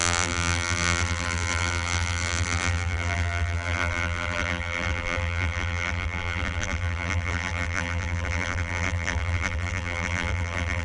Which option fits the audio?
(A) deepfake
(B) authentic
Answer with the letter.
A